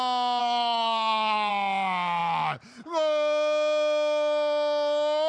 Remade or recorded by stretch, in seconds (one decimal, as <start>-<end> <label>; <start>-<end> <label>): 0.0-0.4 recorded; 0.4-1.5 remade; 1.5-5.3 recorded